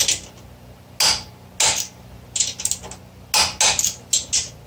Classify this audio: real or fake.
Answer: real